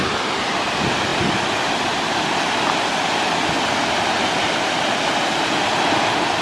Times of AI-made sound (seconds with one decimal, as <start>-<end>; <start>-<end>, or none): none